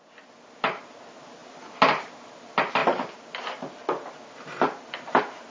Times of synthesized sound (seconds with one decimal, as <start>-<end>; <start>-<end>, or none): none

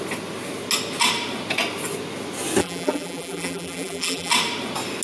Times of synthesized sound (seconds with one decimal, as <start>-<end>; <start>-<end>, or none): 2.6-4.3

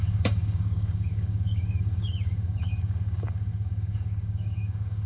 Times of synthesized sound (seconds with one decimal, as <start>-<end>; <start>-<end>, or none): 0.0-5.1

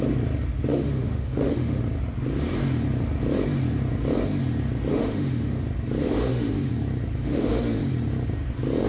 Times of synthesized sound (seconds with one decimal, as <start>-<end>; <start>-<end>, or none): 0.7-1.8; 4.9-5.6; 6.0-6.7; 7.2-7.8

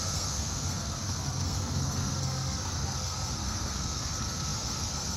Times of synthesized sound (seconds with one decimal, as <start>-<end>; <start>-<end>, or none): 0.0-5.2

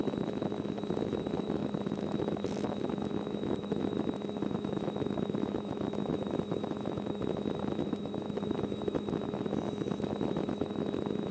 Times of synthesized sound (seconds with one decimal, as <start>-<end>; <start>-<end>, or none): 0.0-11.3

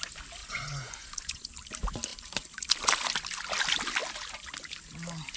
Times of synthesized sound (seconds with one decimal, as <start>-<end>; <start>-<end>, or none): 0.4-1.5

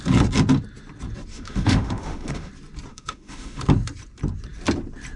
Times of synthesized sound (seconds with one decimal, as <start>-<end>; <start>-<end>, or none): 1.3-2.5; 2.9-3.6